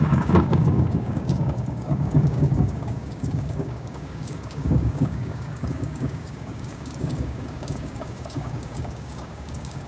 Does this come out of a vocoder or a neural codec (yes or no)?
yes